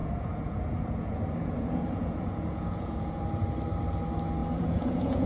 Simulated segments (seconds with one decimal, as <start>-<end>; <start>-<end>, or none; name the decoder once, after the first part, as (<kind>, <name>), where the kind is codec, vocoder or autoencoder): 0.0-3.2 (vocoder, Vocos); 4.4-5.3